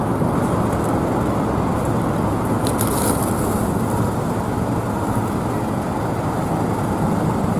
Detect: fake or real real